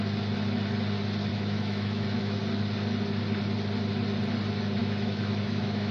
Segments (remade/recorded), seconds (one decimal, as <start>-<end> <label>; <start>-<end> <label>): 0.0-1.3 recorded; 1.3-2.4 remade; 2.4-4.8 recorded; 4.8-5.9 remade